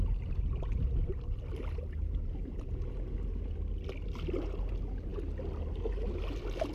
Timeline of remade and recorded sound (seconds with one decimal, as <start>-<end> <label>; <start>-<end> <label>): 0.0-6.7 recorded